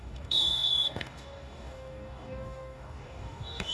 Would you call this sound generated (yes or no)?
yes